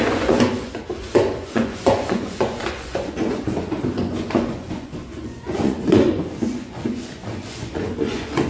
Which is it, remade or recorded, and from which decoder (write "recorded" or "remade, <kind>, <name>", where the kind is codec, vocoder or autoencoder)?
remade, vocoder, Vocos